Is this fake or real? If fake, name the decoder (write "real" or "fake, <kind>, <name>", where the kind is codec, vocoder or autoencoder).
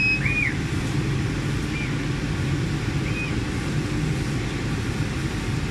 real